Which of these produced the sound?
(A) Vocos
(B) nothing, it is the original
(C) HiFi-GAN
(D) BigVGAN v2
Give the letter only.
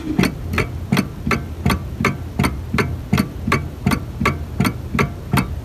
B